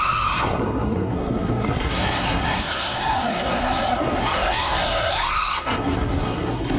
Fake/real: fake